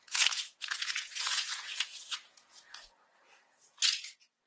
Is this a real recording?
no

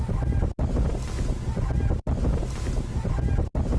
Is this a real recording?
yes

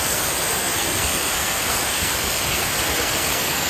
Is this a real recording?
no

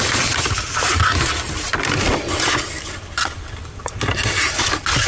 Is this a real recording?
yes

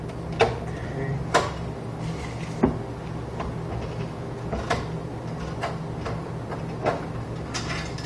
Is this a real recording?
yes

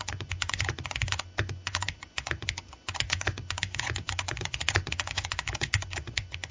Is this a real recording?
no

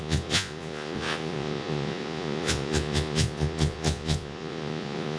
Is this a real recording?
no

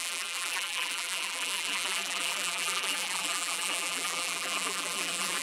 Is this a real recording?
no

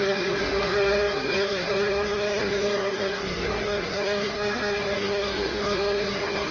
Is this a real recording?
no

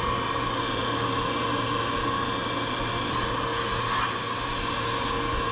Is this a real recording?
yes